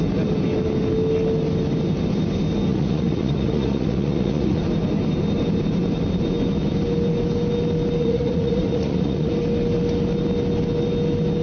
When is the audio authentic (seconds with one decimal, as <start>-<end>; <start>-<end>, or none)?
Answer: 0.0-2.7; 4.6-8.0; 9.3-11.4